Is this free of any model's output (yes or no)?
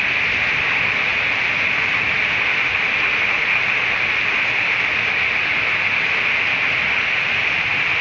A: yes